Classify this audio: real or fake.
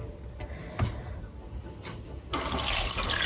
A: real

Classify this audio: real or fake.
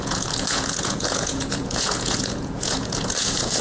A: fake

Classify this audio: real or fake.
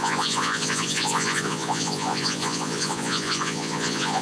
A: fake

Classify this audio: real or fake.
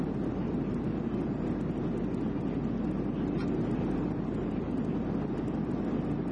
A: real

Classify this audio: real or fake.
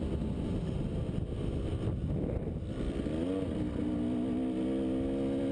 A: real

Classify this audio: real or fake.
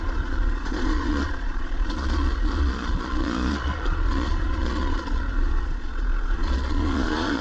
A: fake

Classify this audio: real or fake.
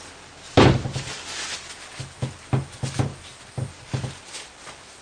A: real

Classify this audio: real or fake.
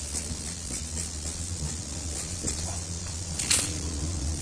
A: fake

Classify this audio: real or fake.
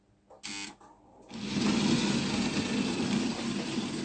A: real